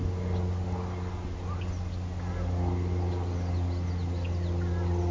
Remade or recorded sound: recorded